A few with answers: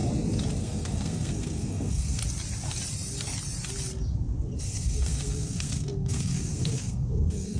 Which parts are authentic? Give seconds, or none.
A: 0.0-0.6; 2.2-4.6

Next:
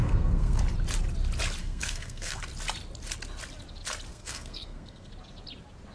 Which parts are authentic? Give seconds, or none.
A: 0.6-1.6; 2.4-4.1; 5.1-5.9

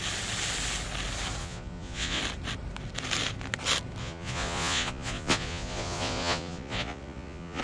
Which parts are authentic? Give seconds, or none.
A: 0.0-1.4; 2.2-4.0

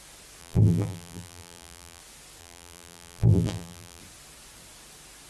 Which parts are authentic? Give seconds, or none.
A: 0.0-0.4; 2.0-2.4; 4.0-5.3

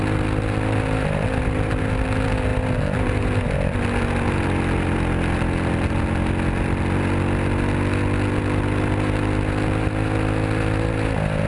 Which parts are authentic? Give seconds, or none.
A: 0.0-11.5

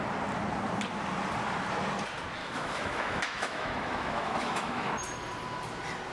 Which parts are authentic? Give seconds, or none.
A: 0.0-2.4; 4.9-6.1

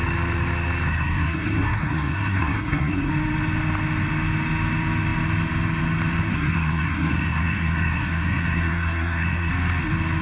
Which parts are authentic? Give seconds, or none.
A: 0.0-0.9; 3.1-6.3; 9.5-10.2

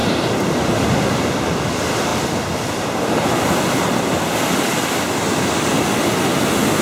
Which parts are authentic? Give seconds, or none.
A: 1.2-2.1; 3.7-6.8